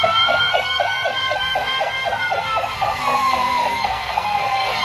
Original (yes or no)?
no